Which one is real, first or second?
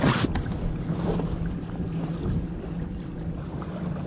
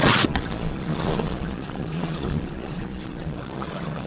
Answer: first